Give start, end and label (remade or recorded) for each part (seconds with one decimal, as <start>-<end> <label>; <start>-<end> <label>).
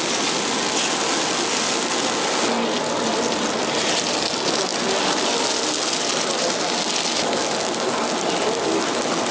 0.0-9.3 recorded